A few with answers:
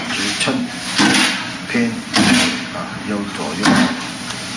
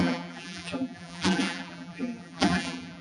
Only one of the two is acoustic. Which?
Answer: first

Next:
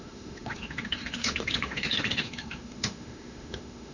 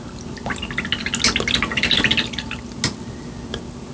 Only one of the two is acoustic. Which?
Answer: second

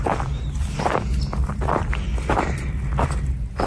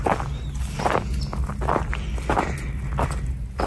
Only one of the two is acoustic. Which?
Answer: second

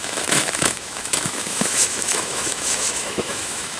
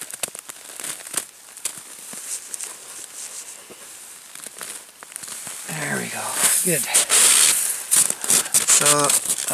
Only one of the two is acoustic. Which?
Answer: second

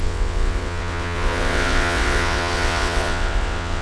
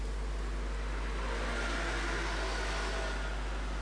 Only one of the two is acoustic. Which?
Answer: second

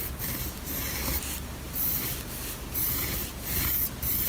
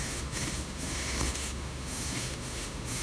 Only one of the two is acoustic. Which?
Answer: first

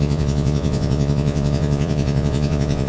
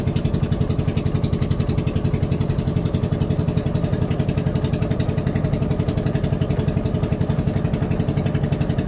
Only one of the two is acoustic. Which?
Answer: second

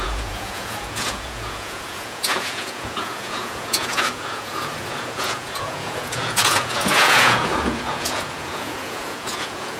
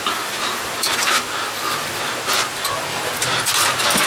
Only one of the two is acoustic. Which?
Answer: second